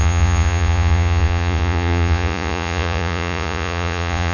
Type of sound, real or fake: fake